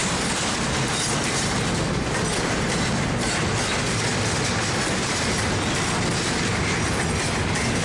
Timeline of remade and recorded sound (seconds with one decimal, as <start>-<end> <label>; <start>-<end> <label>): 0.0-7.8 recorded